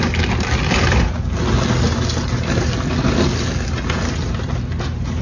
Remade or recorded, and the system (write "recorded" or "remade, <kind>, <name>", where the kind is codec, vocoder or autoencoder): recorded